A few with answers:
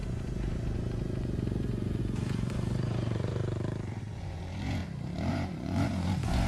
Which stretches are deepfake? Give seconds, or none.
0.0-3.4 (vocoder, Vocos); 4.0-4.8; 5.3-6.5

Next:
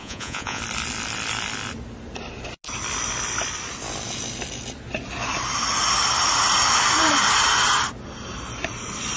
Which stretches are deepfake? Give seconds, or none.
0.0-0.6 (vocoder, Vocos)